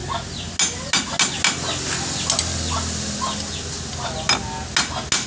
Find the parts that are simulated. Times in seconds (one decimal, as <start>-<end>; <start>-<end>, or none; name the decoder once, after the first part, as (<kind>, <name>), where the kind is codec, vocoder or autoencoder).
none